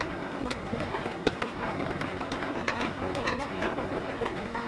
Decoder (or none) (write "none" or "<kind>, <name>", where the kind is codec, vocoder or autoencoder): codec, SNAC